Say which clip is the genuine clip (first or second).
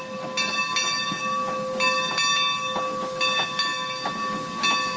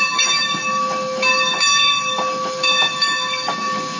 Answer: first